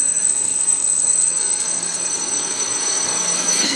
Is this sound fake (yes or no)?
yes